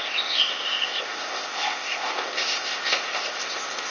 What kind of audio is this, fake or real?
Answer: fake